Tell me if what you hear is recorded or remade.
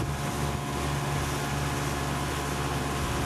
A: recorded